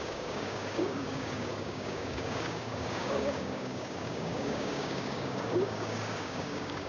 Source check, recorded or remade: remade